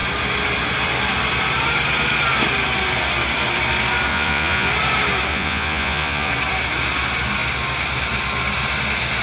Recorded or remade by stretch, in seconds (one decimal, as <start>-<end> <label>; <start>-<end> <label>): 0.0-4.1 recorded; 4.1-4.7 remade; 4.7-5.3 recorded; 5.3-6.3 remade; 6.3-9.2 recorded